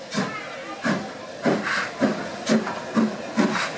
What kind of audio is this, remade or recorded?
recorded